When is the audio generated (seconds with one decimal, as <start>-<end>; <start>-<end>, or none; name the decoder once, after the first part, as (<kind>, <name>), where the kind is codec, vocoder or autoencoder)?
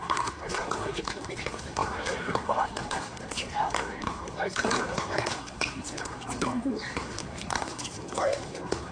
0.0-8.9 (codec, SNAC)